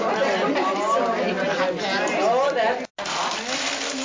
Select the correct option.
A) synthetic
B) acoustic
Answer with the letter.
B